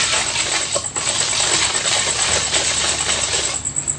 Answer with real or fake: real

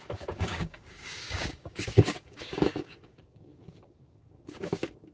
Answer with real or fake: fake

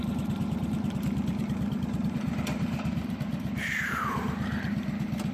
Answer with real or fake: fake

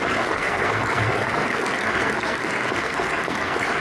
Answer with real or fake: fake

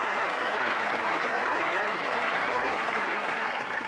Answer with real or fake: fake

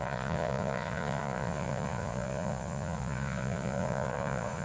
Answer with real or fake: fake